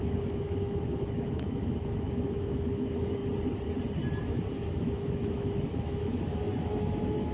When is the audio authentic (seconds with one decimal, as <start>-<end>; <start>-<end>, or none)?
3.2-4.2